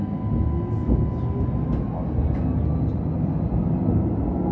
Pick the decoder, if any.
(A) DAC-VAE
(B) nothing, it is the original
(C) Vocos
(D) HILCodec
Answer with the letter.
B